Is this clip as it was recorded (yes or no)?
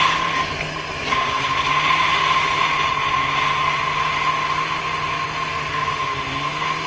yes